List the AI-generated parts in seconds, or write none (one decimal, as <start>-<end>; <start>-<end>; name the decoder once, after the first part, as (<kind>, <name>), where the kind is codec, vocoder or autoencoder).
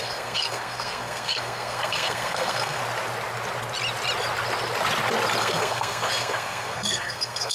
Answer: 0.0-2.8 (codec, SNAC); 5.4-7.5